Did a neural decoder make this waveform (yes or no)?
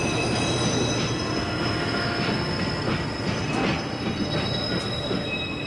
no